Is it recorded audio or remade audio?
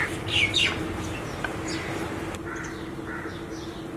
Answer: recorded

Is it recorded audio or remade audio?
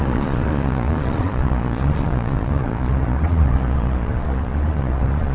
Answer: remade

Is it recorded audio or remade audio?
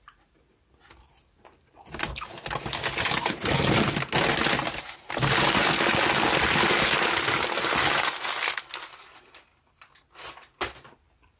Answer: recorded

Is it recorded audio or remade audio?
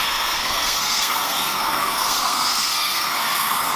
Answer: remade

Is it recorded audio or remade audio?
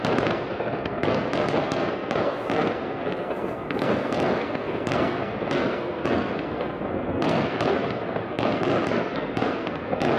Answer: remade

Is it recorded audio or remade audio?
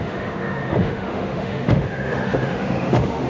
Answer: remade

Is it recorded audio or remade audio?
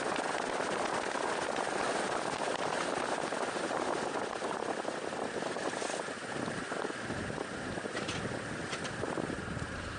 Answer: recorded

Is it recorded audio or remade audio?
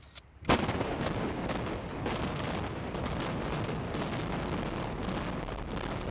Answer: recorded